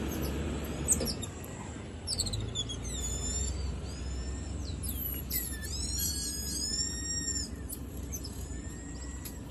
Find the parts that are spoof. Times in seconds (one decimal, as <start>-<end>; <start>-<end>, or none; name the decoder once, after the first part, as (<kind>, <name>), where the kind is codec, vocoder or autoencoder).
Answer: 0.0-2.2 (vocoder, BigVGAN v2); 3.0-9.5